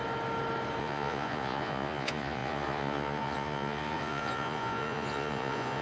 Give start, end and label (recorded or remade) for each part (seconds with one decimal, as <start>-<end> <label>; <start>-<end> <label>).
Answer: 0.0-0.8 recorded; 0.8-5.8 remade